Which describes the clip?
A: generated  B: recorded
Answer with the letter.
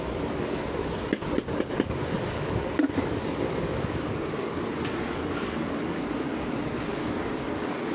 A